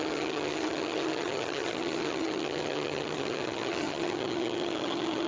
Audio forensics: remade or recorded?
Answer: remade